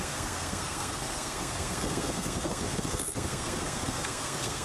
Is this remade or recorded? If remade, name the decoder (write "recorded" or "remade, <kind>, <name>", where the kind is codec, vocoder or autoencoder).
remade, codec, SNAC